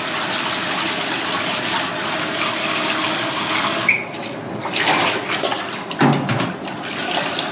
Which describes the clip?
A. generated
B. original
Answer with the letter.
B